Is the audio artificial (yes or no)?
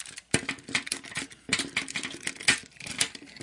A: yes